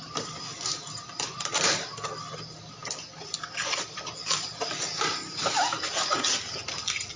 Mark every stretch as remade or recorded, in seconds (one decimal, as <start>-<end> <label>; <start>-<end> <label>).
0.0-7.2 recorded